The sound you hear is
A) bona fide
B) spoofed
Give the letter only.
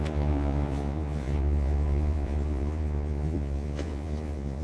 B